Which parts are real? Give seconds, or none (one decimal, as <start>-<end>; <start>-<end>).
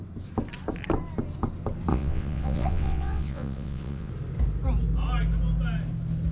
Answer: 0.0-1.9; 4.1-6.3